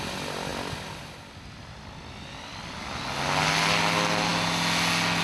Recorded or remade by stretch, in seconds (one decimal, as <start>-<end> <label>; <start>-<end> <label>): 0.0-5.2 recorded